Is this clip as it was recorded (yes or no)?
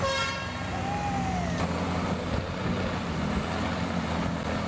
yes